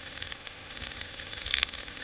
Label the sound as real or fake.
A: fake